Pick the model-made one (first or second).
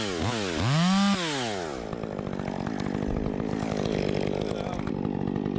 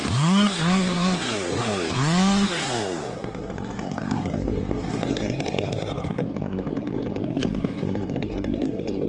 second